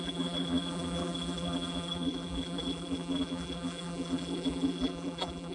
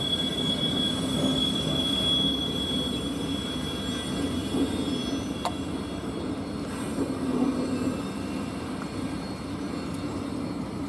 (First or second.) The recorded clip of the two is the second